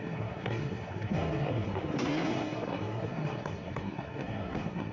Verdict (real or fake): fake